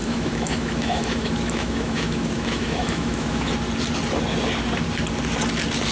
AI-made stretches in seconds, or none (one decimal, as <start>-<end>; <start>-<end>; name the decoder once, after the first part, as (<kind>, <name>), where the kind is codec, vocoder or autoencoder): 0.0-3.5 (autoencoder, DAC-VAE)